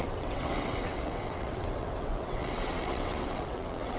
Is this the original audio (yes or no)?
no